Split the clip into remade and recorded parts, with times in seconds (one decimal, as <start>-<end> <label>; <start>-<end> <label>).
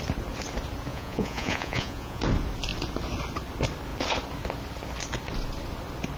0.0-0.9 recorded; 0.9-2.2 remade; 2.2-6.2 recorded